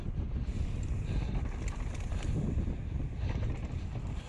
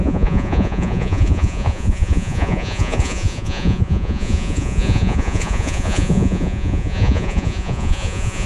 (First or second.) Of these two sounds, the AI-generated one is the second